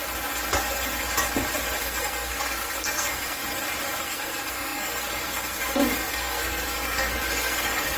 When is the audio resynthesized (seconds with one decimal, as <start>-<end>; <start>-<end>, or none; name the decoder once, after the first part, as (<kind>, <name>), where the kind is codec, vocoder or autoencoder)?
1.8-3.4 (codec, SNAC); 4.0-8.0